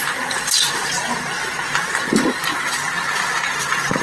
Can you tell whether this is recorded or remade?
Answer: recorded